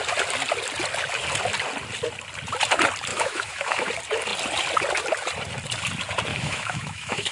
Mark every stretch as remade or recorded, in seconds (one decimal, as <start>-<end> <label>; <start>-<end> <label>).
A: 0.0-3.1 recorded; 3.1-3.9 remade; 3.9-6.3 recorded; 6.3-7.3 remade